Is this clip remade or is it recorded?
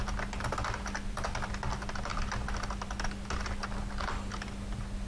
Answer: recorded